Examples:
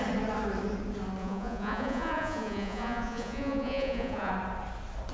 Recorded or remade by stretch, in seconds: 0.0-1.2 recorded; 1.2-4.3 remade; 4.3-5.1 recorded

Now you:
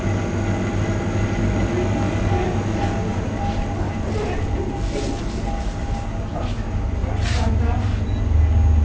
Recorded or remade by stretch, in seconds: 0.0-3.1 recorded; 3.1-3.6 remade; 3.6-7.0 recorded; 7.0-7.5 remade; 7.5-8.8 recorded

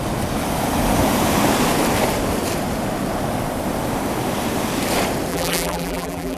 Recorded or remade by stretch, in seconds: 0.0-5.3 recorded; 5.3-6.4 remade

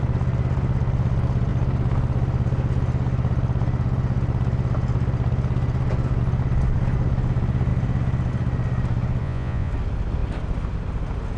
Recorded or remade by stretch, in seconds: 0.0-9.2 recorded; 9.2-9.7 remade; 9.7-11.4 recorded

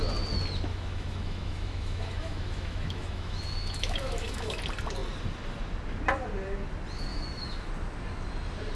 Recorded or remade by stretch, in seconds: 0.0-0.7 recorded; 0.7-4.6 remade; 4.6-7.1 recorded; 7.1-7.7 remade; 7.7-8.8 recorded

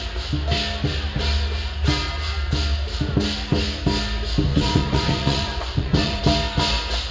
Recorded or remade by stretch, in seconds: 0.0-4.5 recorded; 4.5-6.2 remade; 6.2-7.1 recorded

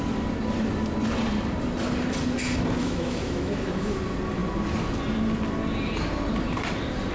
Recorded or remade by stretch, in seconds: 0.0-2.8 recorded; 2.8-4.0 remade; 4.0-7.1 recorded